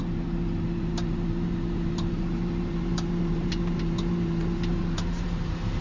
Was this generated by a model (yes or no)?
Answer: yes